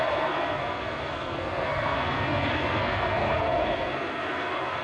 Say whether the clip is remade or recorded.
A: remade